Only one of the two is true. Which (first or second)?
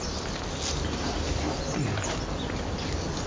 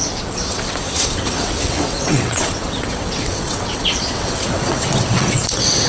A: first